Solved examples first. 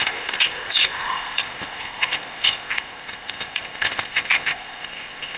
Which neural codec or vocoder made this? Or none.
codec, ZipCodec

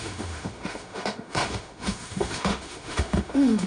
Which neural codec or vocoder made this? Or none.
autoencoder, DAC-VAE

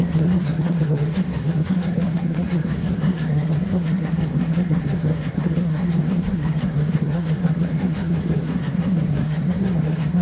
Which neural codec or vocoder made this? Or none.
codec, SNAC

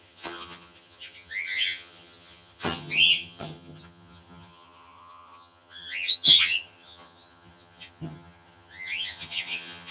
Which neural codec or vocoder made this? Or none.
vocoder, HiFi-GAN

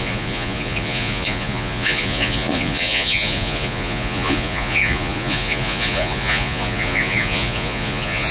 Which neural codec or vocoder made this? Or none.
vocoder, Vocos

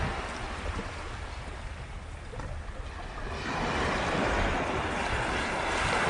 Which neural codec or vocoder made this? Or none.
none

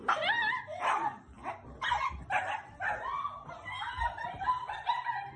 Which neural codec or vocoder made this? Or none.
none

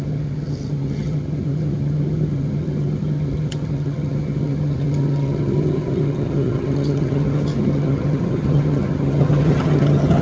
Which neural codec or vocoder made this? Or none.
vocoder, HiFi-GAN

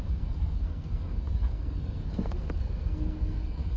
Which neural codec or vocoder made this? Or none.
codec, SNAC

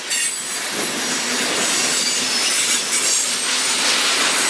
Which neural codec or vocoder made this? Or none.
none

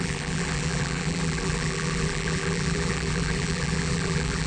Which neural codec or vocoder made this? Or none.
vocoder, BigVGAN v2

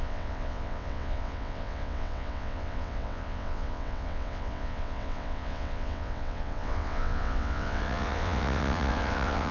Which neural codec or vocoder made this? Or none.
vocoder, WaveNeXt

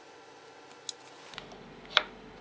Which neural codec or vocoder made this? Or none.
none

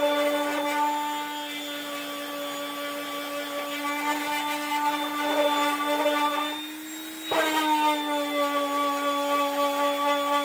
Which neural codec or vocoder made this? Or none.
none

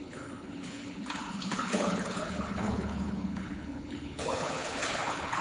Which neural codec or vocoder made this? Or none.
codec, HILCodec